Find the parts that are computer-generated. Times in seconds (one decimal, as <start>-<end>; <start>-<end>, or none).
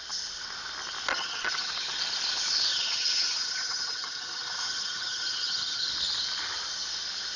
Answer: 1.1-1.7; 2.7-5.9